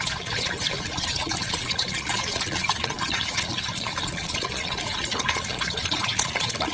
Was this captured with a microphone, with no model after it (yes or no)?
no